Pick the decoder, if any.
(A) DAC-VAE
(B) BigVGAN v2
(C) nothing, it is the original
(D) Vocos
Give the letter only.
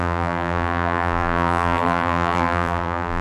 B